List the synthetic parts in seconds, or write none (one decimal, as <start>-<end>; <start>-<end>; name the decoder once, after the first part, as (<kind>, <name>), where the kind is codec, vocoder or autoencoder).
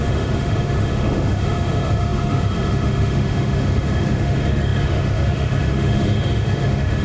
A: 0.0-7.0 (autoencoder, DAC-VAE)